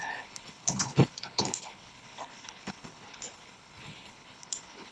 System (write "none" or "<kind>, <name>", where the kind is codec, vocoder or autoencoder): codec, HILCodec